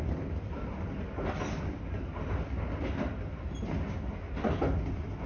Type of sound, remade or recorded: recorded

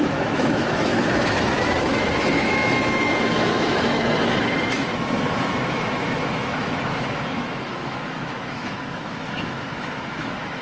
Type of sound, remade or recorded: remade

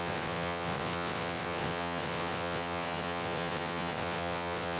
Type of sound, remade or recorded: remade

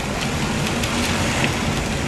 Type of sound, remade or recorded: recorded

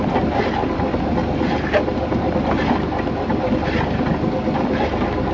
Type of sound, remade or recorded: recorded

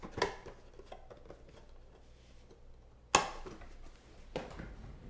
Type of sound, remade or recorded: recorded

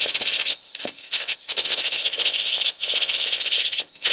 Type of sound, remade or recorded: remade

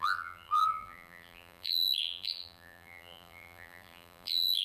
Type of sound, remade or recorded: remade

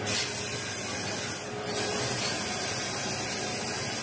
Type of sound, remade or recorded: recorded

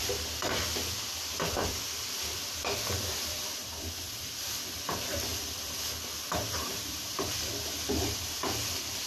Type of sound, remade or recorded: remade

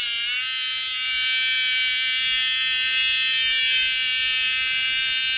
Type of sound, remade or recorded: recorded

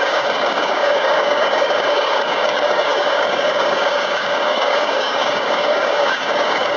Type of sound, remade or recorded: remade